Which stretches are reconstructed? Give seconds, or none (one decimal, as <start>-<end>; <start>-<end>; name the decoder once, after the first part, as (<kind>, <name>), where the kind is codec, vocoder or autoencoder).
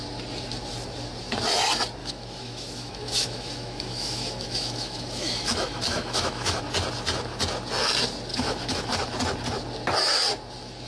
2.0-6.6 (autoencoder, DAC-VAE); 8.3-8.9